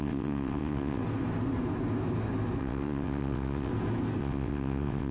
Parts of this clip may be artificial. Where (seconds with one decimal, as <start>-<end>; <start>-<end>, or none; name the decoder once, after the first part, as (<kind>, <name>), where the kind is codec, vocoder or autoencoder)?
0.0-1.0 (vocoder, WaveNeXt); 2.6-3.7; 4.2-5.1

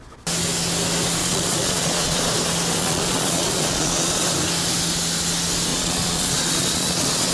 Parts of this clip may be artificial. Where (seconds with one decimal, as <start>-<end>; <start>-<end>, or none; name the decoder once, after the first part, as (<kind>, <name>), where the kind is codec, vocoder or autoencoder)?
1.2-2.2 (vocoder, Vocos); 2.8-4.2; 5.7-7.3

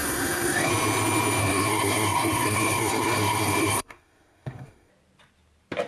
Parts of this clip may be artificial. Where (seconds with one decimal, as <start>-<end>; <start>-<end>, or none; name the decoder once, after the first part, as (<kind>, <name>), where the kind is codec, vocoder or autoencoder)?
0.0-0.7 (codec, SNAC); 1.4-4.9

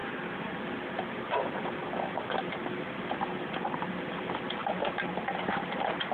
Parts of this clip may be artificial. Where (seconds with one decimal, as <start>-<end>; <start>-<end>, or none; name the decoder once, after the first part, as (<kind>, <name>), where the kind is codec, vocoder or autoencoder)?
none

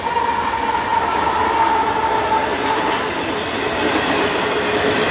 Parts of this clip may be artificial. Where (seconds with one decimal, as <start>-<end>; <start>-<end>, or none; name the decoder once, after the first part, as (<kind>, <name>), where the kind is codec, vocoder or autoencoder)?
none

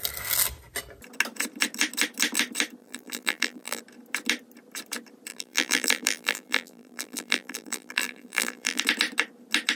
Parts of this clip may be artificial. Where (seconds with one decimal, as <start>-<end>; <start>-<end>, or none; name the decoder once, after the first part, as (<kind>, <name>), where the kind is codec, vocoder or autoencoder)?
2.8-3.8 (vocoder, BigVGAN v2); 5.3-8.8

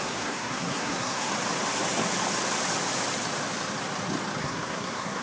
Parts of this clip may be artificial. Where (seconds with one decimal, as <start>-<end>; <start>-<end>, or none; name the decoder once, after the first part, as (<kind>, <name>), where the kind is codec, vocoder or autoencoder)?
0.0-1.3 (codec, SNAC); 4.4-5.2